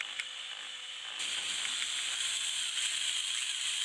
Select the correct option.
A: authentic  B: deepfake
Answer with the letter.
B